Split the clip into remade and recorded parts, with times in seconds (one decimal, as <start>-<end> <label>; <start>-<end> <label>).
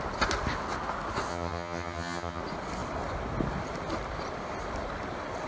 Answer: 0.0-1.3 recorded; 1.3-2.4 remade; 2.4-5.5 recorded